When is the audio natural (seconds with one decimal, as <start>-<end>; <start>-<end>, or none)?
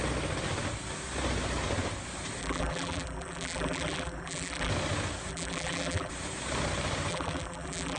0.0-2.4; 4.7-5.3; 6.1-7.1